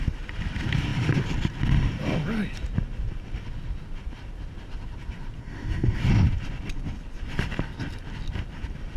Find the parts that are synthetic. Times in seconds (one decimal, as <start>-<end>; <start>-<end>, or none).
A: 5.4-6.0